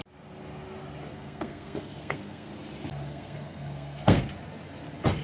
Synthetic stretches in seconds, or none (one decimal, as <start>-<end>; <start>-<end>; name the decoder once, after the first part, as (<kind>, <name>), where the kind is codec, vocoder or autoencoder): 1.1-2.5 (codec, SNAC); 3.1-4.2